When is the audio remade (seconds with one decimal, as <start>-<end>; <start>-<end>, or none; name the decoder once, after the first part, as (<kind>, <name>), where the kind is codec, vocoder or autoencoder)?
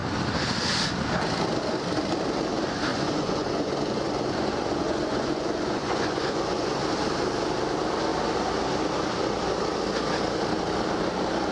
2.9-6.8 (vocoder, Vocos)